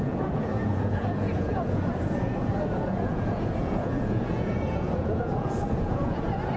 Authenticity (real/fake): fake